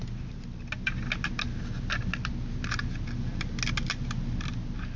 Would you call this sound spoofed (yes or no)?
no